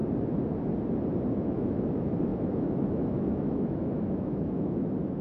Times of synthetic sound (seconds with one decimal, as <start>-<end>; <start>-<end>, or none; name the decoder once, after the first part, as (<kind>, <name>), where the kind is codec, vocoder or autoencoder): 1.3-5.2 (autoencoder, DAC-VAE)